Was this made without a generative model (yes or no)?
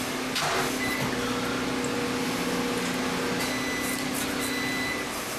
yes